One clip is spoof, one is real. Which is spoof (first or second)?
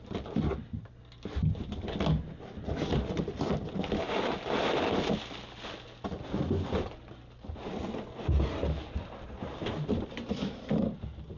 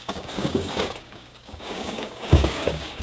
second